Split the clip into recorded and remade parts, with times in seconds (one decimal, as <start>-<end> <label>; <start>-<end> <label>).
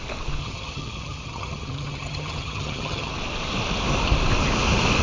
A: 0.0-0.4 recorded; 0.4-3.1 remade; 3.1-5.0 recorded